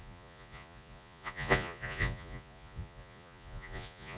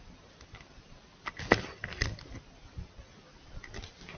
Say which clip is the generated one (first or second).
first